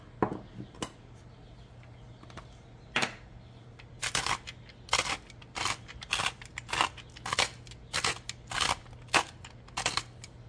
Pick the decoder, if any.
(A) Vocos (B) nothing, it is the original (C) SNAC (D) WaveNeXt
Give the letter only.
B